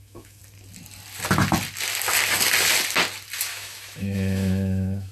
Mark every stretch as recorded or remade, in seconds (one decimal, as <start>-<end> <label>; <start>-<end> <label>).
0.0-0.4 remade; 0.4-3.5 recorded; 3.5-5.1 remade